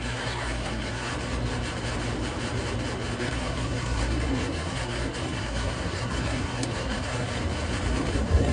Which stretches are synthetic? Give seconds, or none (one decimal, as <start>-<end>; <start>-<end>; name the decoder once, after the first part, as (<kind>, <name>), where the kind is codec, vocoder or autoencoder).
0.0-1.1 (codec, SNAC); 3.2-7.3; 8.0-8.5